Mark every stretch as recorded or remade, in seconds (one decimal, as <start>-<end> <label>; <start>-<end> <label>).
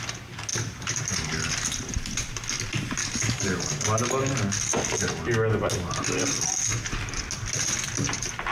0.0-3.0 recorded; 3.0-3.7 remade; 3.7-8.5 recorded